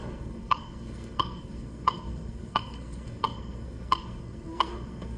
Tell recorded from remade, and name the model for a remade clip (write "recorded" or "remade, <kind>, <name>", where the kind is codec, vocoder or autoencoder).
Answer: remade, codec, SNAC